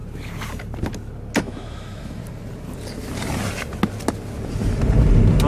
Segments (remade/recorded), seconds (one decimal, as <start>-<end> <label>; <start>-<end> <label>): 0.0-1.4 recorded; 1.4-2.2 remade; 2.2-5.5 recorded